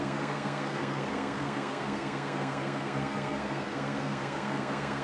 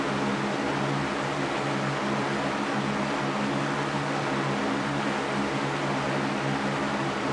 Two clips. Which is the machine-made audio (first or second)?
first